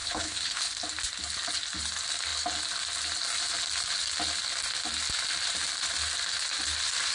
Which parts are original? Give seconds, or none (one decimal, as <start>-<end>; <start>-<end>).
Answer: 0.7-7.1